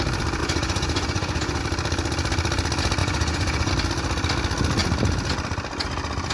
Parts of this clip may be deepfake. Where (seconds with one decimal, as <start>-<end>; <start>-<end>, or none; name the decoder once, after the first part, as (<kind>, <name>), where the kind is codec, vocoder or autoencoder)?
0.4-1.6 (vocoder, Vocos); 3.0-3.7